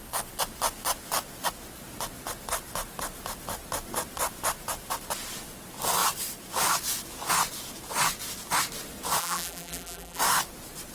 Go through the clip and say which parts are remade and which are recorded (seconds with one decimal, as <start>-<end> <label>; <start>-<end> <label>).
0.0-9.2 recorded; 9.2-10.2 remade; 10.2-10.9 recorded